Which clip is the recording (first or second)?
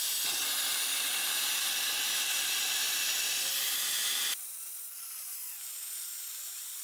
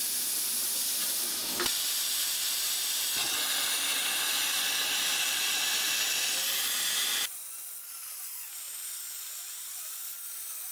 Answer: second